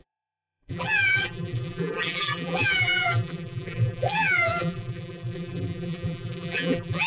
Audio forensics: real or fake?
fake